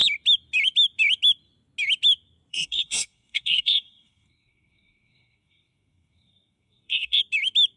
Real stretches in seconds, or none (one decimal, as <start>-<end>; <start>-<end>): 0.0-2.5; 7.2-7.8